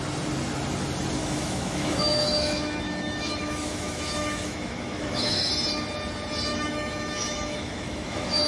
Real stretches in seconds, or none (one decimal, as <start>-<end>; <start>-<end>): 0.0-1.2; 5.5-6.5